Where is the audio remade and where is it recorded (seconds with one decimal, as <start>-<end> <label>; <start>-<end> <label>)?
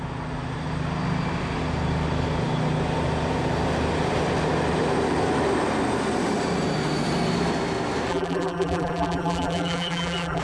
0.0-8.1 recorded; 8.1-10.4 remade